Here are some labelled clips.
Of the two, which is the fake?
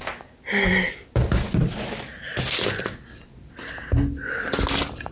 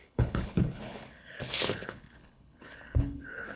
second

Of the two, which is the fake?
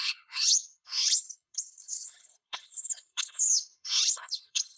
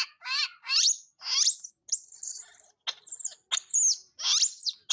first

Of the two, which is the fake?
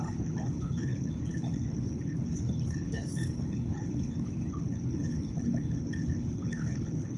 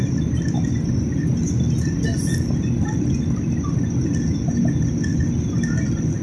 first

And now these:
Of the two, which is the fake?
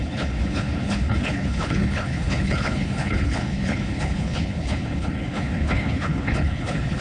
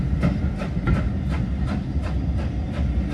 first